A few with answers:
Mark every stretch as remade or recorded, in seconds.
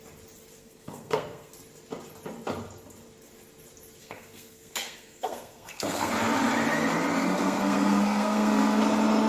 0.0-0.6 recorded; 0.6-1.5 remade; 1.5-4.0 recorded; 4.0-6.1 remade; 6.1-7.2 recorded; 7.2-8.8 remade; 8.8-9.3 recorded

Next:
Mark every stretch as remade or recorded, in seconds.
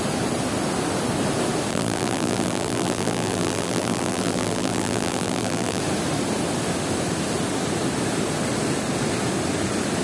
0.0-1.7 recorded; 1.7-5.8 remade; 5.8-10.0 recorded